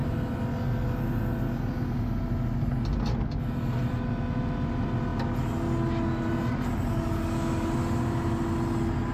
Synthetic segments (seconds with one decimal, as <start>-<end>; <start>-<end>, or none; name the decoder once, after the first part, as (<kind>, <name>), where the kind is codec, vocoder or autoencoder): none

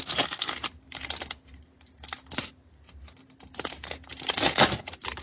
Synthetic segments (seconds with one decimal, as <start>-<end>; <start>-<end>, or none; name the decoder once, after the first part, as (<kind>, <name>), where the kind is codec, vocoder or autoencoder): 0.0-4.1 (vocoder, BigVGAN v2); 4.8-5.2

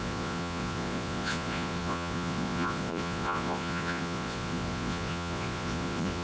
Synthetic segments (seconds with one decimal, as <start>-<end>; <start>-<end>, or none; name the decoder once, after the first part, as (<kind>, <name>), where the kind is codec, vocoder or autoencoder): 0.0-6.2 (vocoder, Vocos)

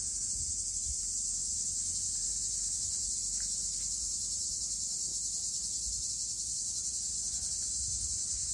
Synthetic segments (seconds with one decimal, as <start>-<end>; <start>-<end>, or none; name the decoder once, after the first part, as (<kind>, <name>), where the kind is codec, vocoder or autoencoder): none

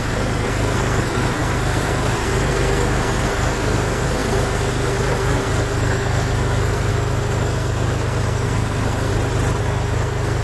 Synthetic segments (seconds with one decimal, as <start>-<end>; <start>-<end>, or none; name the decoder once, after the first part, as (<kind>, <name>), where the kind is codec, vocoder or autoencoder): 0.0-9.1 (codec, SNAC); 9.6-10.4

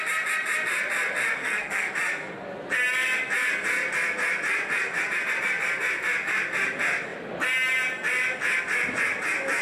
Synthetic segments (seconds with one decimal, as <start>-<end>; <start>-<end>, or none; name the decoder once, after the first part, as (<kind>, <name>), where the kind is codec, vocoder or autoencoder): 1.4-1.9 (codec, SNAC)

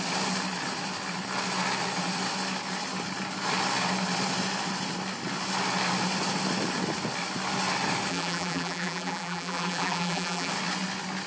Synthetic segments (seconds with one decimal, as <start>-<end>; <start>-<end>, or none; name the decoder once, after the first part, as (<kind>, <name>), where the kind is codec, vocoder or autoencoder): 8.1-10.5 (vocoder, BigVGAN v2)

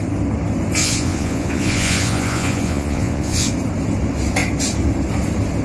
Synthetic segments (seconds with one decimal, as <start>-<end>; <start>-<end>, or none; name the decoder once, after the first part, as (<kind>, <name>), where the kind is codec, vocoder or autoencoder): 0.8-3.5 (vocoder, Vocos)